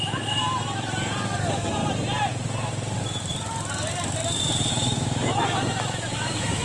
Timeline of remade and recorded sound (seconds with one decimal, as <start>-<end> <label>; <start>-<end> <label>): 0.0-0.4 remade; 0.4-1.4 recorded; 1.4-1.8 remade; 1.8-4.7 recorded; 4.7-6.6 remade